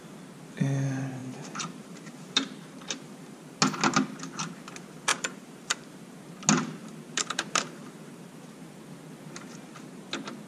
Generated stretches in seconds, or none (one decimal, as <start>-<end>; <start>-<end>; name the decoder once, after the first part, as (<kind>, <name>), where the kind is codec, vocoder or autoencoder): 1.2-3.6 (vocoder, BigVGAN v2); 5.1-5.9; 6.8-8.3